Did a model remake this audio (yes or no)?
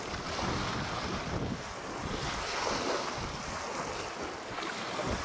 no